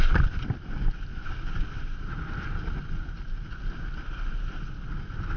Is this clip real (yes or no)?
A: yes